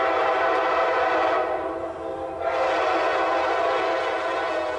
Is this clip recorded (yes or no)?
yes